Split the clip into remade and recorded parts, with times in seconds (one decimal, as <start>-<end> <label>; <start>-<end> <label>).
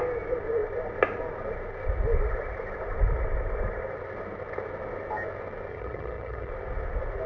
0.0-5.7 recorded; 5.7-6.5 remade; 6.5-7.3 recorded